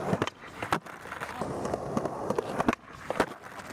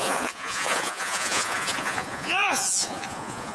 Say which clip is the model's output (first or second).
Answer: second